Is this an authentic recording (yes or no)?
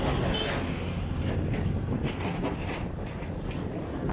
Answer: yes